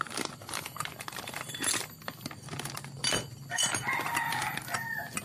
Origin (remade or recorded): remade